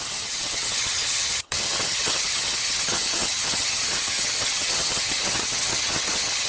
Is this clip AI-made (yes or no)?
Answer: yes